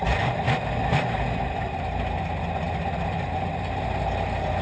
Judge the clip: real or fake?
real